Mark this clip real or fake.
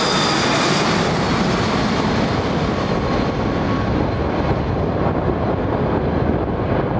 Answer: real